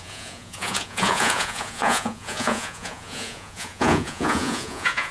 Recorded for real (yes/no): no